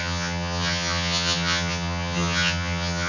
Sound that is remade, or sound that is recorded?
remade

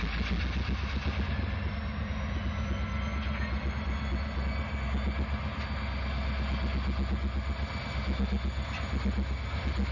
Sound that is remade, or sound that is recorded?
recorded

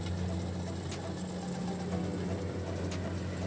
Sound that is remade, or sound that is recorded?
recorded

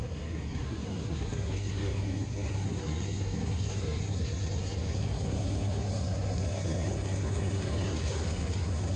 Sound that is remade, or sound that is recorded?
remade